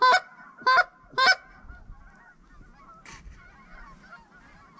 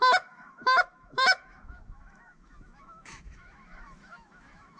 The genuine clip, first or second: first